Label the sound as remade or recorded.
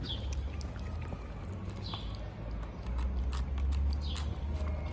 recorded